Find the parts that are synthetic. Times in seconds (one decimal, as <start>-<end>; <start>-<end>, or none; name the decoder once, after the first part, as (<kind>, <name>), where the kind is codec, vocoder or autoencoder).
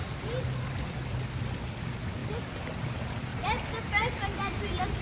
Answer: 0.0-0.7 (vocoder, BigVGAN v2); 2.2-2.7; 3.3-4.2